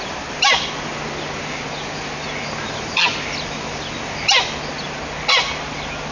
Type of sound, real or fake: real